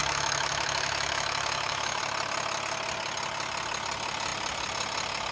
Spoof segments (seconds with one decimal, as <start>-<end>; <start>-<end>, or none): 0.0-2.0

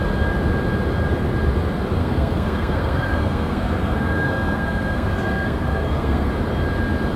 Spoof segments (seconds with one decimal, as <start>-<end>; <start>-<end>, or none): 2.0-6.3

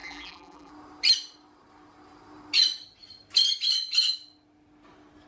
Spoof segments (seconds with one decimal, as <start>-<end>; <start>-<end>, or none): 0.0-0.7

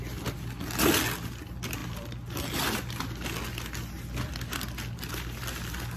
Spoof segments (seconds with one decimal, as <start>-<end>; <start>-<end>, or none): none